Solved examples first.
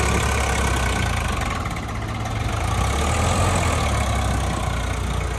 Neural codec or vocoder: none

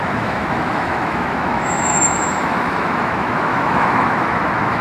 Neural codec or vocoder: autoencoder, DAC-VAE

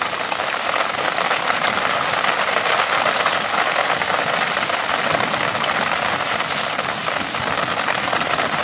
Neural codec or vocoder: none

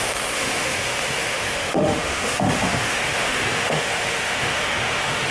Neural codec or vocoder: autoencoder, DAC-VAE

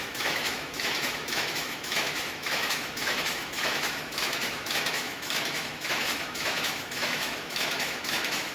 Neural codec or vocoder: autoencoder, DAC-VAE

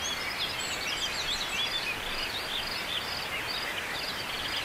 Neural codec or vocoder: none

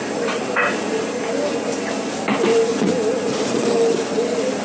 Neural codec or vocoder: none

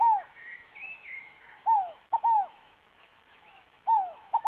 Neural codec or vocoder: autoencoder, DAC-VAE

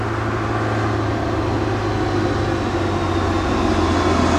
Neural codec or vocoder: none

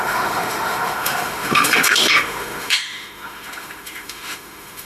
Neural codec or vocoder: autoencoder, DAC-VAE